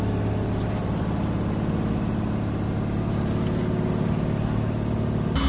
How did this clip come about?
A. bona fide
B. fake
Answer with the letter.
A